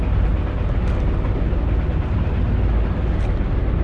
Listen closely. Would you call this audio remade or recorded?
recorded